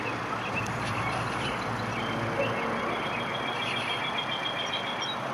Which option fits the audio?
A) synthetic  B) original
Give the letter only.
B